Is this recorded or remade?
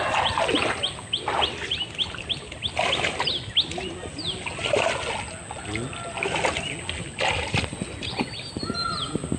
recorded